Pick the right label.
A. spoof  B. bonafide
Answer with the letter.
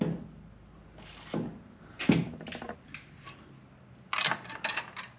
B